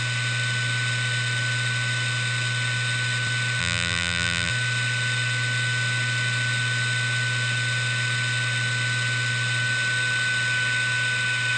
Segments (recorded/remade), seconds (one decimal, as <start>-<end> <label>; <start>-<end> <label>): 0.0-3.6 recorded; 3.6-4.5 remade; 4.5-11.6 recorded